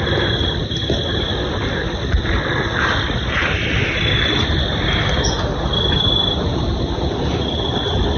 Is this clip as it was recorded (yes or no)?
yes